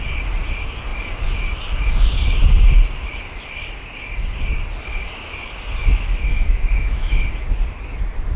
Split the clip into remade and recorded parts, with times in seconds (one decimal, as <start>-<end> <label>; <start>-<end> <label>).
0.0-5.8 recorded; 5.8-7.3 remade; 7.3-8.4 recorded